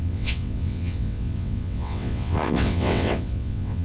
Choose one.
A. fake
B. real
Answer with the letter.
A